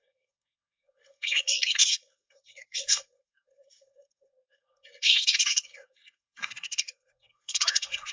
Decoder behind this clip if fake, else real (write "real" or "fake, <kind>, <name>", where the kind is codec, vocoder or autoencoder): fake, codec, SNAC